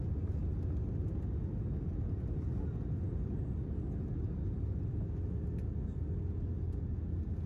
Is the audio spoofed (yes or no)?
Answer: no